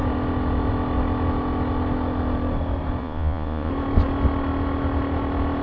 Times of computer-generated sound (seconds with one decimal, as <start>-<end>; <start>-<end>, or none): 3.0-3.7